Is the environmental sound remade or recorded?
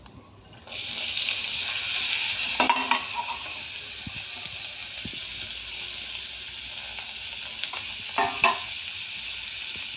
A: recorded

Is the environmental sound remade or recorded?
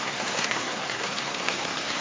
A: remade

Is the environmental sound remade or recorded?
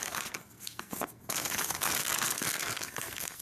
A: remade